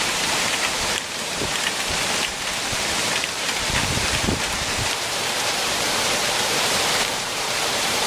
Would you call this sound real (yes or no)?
no